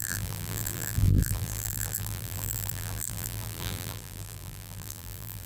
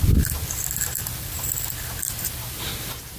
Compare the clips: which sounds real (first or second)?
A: second